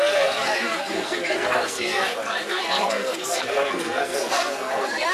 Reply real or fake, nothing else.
fake